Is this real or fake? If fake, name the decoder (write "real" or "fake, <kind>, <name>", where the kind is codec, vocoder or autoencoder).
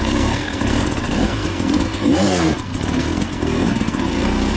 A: fake, codec, SNAC